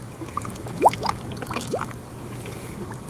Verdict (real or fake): fake